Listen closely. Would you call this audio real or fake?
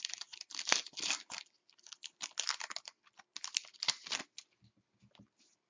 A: real